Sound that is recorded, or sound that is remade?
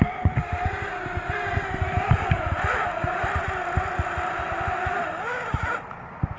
recorded